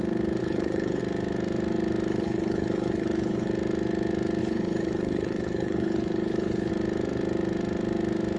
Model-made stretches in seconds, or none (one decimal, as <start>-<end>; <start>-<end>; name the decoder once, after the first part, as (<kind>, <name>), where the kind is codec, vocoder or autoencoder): 0.4-1.0 (codec, HILCodec); 2.1-3.5; 4.4-6.7